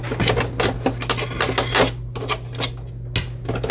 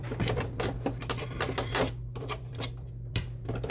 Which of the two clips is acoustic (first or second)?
first